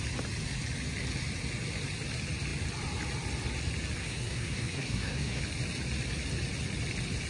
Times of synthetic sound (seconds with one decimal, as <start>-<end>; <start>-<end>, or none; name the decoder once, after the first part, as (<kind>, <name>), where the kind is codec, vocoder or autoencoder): 4.0-5.4 (codec, SNAC)